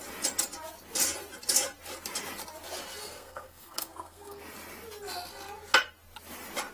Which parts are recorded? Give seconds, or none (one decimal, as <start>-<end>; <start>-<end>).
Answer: 0.0-3.0; 4.4-6.7